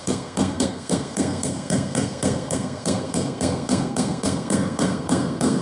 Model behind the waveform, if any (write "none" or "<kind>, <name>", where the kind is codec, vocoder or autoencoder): codec, SNAC